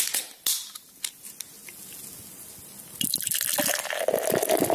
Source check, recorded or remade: recorded